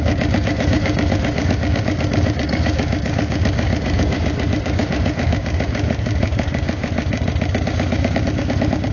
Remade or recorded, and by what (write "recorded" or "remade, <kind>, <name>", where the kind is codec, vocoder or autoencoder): remade, codec, DAC